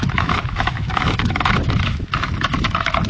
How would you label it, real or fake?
fake